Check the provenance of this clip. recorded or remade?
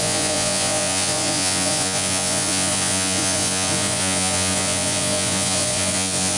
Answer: remade